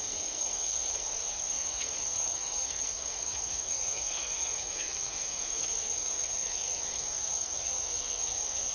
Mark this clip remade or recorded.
remade